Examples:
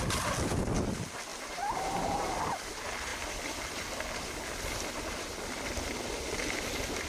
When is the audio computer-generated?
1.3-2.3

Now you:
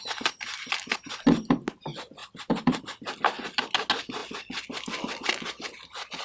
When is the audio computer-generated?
2.2-2.8; 4.2-6.2

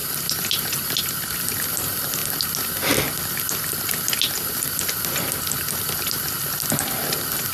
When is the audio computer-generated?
none

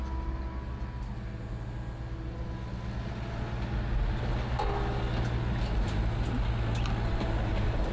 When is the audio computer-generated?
7.1-7.9